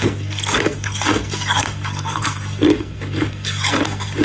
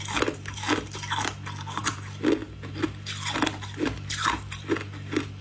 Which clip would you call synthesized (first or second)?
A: first